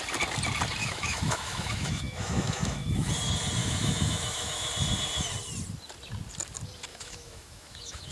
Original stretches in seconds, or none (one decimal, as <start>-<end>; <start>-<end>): 0.0-0.8; 3.1-3.6; 4.7-6.9